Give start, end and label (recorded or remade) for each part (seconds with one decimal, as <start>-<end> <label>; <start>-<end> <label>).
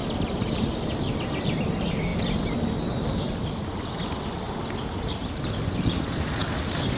0.0-7.0 recorded